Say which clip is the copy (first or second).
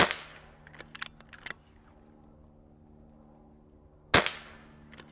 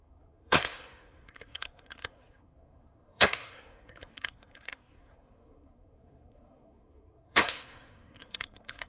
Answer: second